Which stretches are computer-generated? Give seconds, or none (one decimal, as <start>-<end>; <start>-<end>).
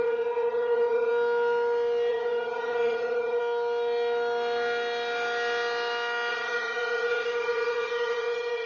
0.0-1.1; 2.1-3.4; 6.3-8.7